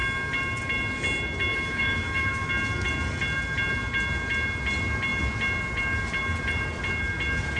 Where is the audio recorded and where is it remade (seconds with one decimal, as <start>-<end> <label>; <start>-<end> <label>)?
0.0-1.5 recorded; 1.5-2.5 remade; 2.5-7.6 recorded